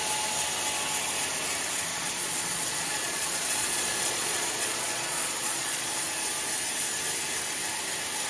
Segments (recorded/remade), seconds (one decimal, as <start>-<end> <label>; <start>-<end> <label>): 0.0-1.9 recorded; 1.9-5.9 remade; 5.9-8.3 recorded